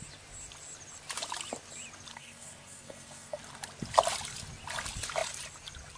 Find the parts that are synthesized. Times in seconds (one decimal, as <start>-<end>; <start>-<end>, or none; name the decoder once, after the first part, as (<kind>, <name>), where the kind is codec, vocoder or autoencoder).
2.1-3.4 (codec, SNAC)